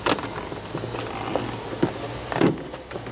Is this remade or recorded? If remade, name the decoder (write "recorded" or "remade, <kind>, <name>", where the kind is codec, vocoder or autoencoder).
recorded